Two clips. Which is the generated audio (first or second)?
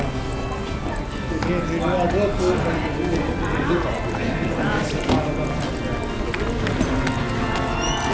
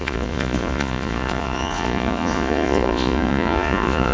second